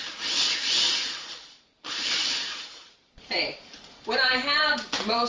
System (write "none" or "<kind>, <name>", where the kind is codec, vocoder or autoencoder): vocoder, BigVGAN v2